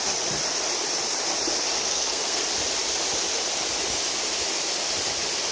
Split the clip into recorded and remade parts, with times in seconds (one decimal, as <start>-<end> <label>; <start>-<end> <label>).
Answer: 0.0-1.8 recorded; 1.8-2.4 remade; 2.4-5.5 recorded